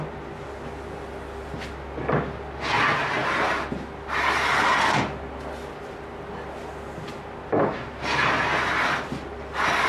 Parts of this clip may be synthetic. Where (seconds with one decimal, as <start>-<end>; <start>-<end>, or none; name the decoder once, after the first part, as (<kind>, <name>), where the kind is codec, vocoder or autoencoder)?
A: none